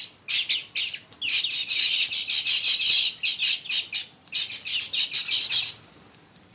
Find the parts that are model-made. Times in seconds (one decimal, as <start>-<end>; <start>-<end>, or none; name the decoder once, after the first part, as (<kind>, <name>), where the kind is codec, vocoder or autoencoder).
none